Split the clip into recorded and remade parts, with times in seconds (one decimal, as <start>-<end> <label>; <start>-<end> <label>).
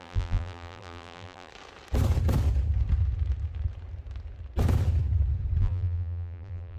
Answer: 0.0-1.5 remade; 1.5-5.6 recorded; 5.6-6.8 remade